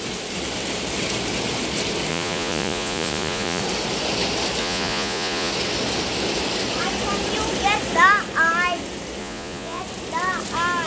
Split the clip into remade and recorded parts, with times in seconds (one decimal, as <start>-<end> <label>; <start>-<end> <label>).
0.0-2.1 recorded; 2.1-3.6 remade; 3.6-4.6 recorded; 4.6-5.5 remade; 5.5-9.2 recorded; 9.2-9.8 remade; 9.8-10.9 recorded